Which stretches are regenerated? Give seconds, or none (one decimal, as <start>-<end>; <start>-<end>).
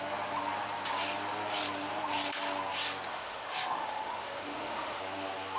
3.1-5.0